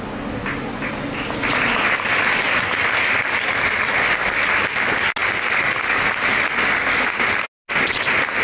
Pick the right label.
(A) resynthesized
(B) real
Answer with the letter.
B